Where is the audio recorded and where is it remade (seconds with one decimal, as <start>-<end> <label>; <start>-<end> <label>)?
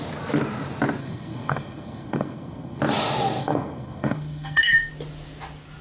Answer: 0.0-1.0 recorded; 1.0-2.8 remade; 2.8-3.4 recorded; 3.4-4.9 remade; 4.9-5.8 recorded